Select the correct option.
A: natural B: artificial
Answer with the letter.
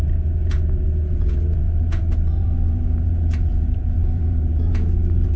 B